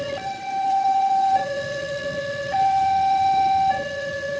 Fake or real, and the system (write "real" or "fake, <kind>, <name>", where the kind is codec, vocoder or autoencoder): fake, vocoder, WaveNeXt